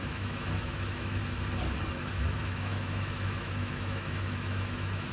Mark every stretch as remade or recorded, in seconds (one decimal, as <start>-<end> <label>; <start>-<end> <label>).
0.0-1.2 remade; 1.2-1.9 recorded; 1.9-5.1 remade